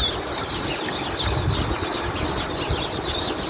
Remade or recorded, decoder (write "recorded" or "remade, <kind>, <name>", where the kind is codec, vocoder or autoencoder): recorded